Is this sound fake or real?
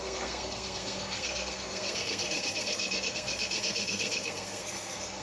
fake